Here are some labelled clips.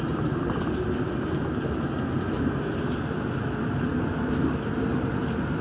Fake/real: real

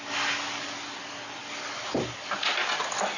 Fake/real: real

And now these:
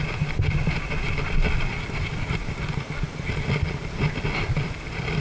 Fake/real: real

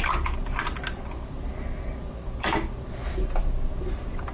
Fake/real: real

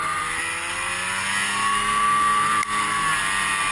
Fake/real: real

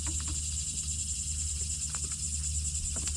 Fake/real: real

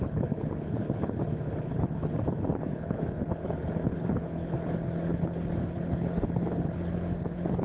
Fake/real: fake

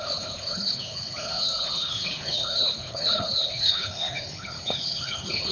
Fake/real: fake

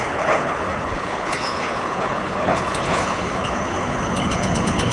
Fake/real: fake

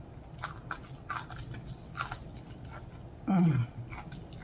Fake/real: real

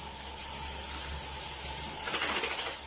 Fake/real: real